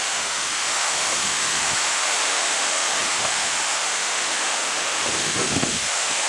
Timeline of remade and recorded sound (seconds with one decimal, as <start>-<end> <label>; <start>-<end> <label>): 0.0-6.3 remade